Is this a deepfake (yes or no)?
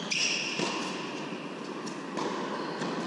no